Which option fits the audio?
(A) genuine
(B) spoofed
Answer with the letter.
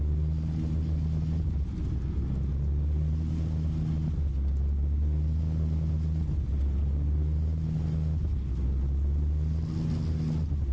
A